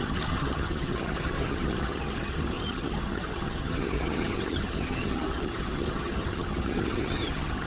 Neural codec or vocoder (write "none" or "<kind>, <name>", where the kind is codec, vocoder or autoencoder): vocoder, HiFi-GAN